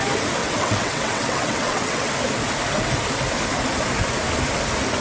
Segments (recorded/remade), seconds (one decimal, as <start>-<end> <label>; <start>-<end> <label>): 0.0-0.4 recorded; 0.4-2.1 remade; 2.1-5.0 recorded

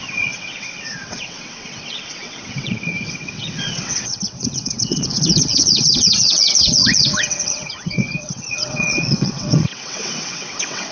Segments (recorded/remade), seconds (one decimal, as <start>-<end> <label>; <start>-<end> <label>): 0.0-10.9 remade

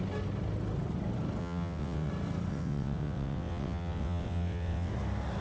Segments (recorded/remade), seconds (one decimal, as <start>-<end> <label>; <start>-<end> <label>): 0.0-1.4 recorded; 1.4-2.1 remade; 2.1-2.5 recorded; 2.5-4.9 remade; 4.9-5.4 recorded

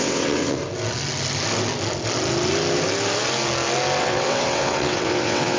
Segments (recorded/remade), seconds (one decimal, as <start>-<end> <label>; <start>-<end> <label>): 0.0-0.6 remade; 0.6-4.0 recorded; 4.0-5.6 remade

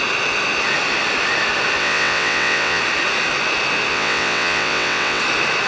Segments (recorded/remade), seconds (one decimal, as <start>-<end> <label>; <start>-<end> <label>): 0.0-1.8 recorded; 1.8-2.8 remade; 2.8-3.9 recorded; 3.9-5.2 remade; 5.2-5.7 recorded

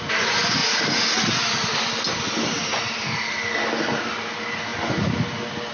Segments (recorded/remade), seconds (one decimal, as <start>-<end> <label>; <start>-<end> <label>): 0.0-5.7 recorded

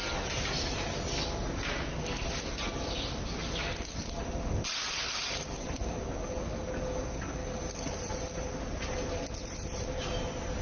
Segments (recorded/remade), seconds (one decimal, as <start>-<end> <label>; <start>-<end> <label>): 0.0-10.6 recorded

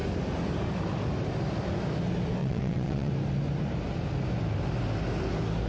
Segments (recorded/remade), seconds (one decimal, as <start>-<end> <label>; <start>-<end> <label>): 0.0-2.4 recorded; 2.4-3.1 remade; 3.1-5.7 recorded